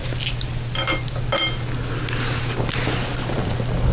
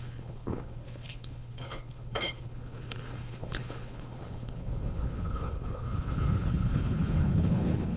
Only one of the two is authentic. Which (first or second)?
first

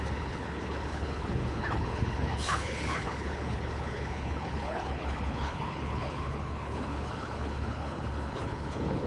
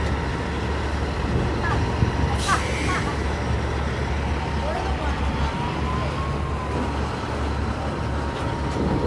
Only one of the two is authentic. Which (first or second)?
second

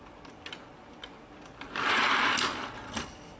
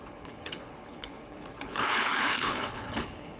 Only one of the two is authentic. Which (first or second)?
first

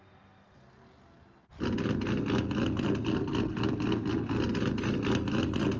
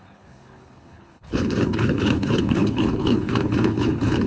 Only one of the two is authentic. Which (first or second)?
first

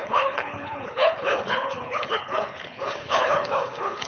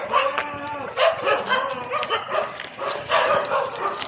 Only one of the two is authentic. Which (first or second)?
second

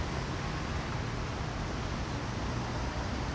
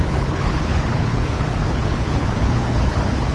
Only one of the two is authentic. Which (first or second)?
first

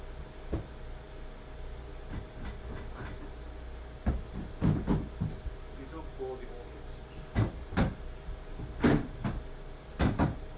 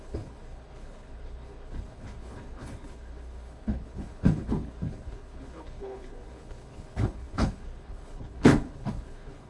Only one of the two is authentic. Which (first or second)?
first